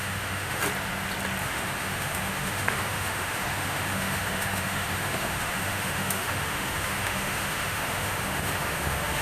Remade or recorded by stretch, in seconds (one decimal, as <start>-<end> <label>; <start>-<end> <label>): 0.0-0.6 remade; 0.6-1.4 recorded; 1.4-9.2 remade